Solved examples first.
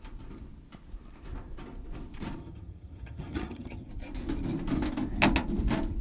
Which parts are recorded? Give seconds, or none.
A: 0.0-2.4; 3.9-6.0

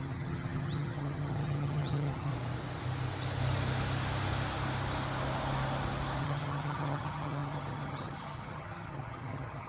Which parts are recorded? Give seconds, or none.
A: 2.3-6.2

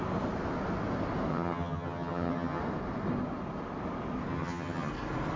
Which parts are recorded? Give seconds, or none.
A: 0.0-1.3; 2.6-4.3; 4.9-5.4